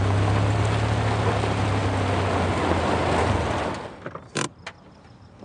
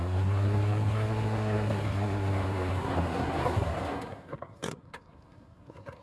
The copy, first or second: second